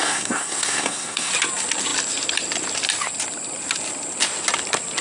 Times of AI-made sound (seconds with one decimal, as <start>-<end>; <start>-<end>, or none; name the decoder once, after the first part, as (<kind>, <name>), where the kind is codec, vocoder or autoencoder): 0.0-1.3 (codec, SNAC)